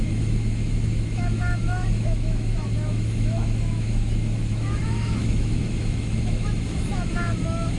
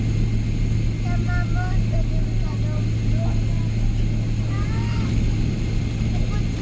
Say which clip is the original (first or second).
second